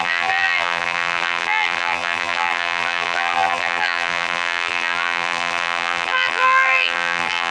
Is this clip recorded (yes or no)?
no